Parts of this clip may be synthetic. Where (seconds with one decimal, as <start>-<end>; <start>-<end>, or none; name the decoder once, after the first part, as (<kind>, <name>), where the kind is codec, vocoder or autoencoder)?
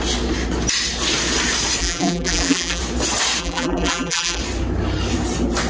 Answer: 1.8-2.8 (vocoder, BigVGAN v2); 3.4-4.4